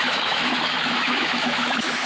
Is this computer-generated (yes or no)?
yes